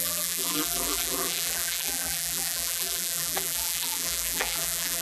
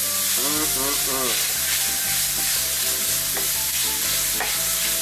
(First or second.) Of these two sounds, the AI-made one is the first